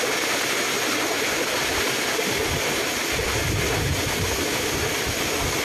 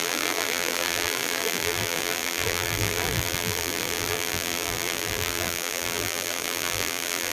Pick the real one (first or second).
first